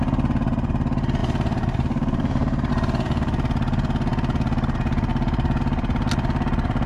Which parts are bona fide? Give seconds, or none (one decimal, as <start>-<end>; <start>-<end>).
0.0-1.2; 2.7-5.1; 5.6-6.9